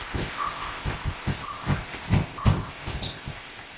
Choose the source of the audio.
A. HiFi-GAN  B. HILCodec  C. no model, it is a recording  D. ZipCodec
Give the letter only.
D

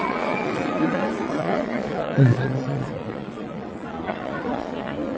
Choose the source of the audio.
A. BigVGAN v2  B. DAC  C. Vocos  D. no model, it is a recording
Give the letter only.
C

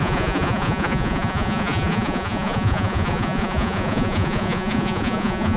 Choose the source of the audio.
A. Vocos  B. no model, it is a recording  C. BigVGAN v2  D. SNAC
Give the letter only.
A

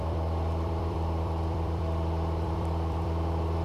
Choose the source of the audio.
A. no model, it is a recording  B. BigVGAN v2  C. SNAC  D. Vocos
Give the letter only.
B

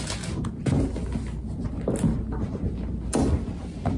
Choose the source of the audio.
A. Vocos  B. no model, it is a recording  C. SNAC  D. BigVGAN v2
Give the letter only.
B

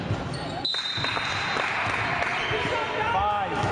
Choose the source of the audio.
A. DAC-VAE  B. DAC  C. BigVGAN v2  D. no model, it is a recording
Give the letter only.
D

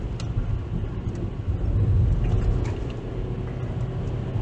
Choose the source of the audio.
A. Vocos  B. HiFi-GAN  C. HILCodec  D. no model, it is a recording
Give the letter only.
D